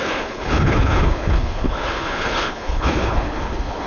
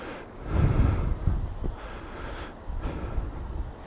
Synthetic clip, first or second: first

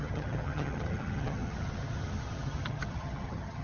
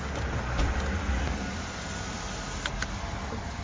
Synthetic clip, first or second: first